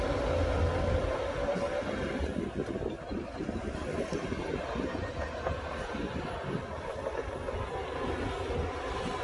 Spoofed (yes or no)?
no